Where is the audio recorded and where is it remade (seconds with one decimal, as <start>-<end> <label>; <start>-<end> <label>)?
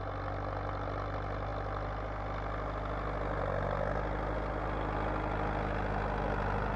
0.0-6.8 recorded